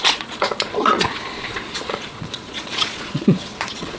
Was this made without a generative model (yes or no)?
no